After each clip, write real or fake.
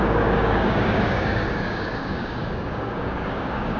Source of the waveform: fake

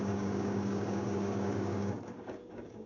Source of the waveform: fake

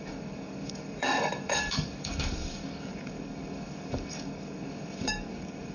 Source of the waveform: fake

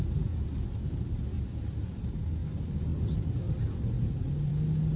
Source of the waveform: real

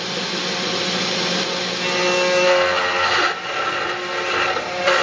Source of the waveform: real